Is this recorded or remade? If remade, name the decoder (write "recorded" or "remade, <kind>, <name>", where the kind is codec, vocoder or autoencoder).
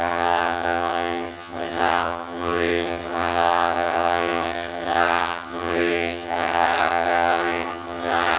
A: remade, vocoder, HiFi-GAN